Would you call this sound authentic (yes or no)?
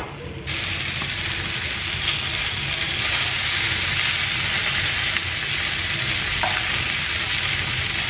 yes